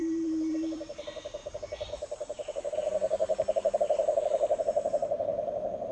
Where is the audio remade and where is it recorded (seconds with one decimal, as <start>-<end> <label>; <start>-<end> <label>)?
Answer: 0.0-1.4 remade; 1.4-1.9 recorded; 1.9-3.0 remade; 3.0-4.6 recorded; 4.6-5.3 remade; 5.3-5.9 recorded